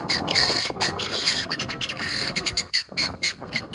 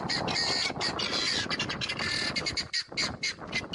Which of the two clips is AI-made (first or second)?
first